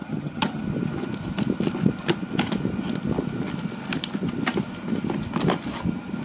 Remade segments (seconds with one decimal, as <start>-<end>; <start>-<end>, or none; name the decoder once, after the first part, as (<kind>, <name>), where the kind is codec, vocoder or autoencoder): 0.0-0.6 (vocoder, HiFi-GAN)